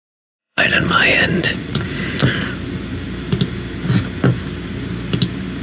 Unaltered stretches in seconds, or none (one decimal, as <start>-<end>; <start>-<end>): 0.0-0.4; 2.2-5.6